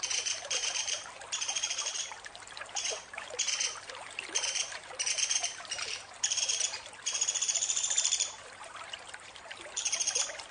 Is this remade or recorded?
remade